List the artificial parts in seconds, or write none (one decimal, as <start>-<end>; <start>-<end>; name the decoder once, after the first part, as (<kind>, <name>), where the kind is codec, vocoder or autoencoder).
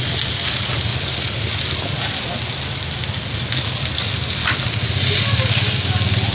none